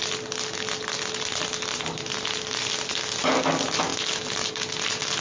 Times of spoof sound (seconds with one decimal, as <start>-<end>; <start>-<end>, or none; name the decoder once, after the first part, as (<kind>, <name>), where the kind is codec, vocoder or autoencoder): none